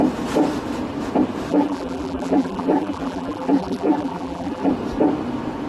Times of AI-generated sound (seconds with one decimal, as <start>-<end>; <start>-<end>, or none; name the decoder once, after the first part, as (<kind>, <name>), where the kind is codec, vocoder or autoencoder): 1.5-4.7 (vocoder, BigVGAN v2)